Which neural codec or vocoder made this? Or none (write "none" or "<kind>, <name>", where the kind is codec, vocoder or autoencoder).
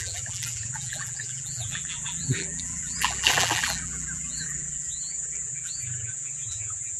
vocoder, BigVGAN v2